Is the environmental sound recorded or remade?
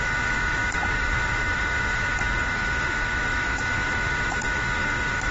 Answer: remade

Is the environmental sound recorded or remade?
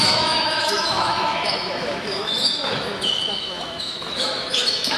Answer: remade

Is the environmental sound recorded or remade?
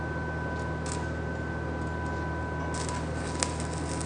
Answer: recorded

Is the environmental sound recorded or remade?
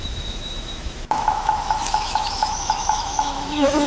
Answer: remade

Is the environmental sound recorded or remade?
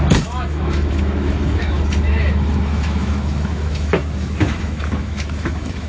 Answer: remade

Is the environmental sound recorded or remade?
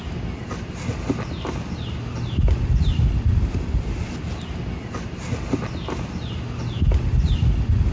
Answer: recorded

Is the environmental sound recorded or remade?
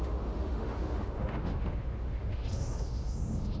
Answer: remade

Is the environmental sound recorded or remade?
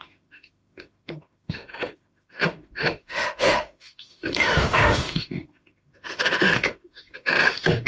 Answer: remade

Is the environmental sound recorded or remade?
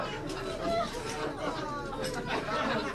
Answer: recorded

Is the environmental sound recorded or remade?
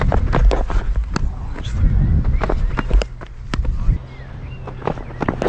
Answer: recorded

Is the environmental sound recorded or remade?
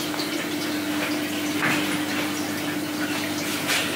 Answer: recorded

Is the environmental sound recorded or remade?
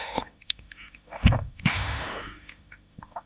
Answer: remade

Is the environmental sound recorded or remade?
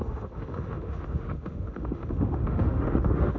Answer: remade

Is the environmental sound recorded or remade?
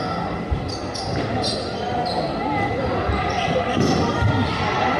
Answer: recorded